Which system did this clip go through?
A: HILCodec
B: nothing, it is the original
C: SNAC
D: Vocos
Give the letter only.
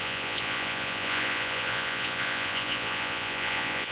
D